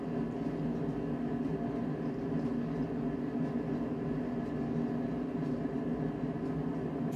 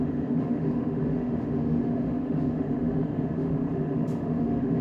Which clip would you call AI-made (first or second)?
second